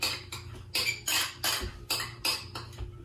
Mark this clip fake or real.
real